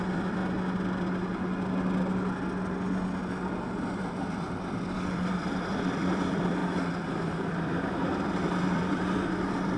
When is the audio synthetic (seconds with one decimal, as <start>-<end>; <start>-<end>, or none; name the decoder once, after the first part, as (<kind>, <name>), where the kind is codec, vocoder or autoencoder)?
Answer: 0.0-0.4 (vocoder, BigVGAN v2); 3.8-6.6; 7.1-9.8

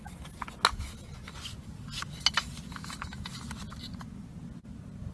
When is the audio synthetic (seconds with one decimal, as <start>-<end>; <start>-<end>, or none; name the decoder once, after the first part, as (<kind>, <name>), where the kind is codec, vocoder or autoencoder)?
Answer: none

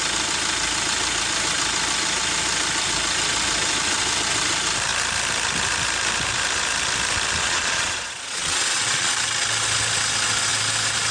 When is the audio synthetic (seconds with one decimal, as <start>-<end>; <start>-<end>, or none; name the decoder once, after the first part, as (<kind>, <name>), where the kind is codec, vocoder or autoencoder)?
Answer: 7.4-9.1 (vocoder, Vocos)

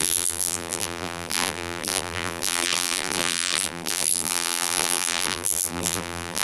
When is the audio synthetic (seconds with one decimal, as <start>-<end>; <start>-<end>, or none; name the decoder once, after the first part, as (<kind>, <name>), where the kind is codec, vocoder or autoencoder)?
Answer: 0.0-6.4 (vocoder, BigVGAN v2)